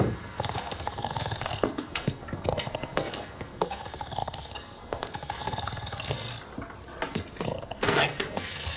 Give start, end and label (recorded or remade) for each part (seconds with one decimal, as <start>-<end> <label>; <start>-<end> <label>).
0.0-6.3 remade; 6.3-7.1 recorded; 7.1-8.8 remade